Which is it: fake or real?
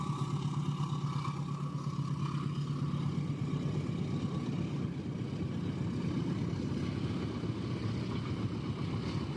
real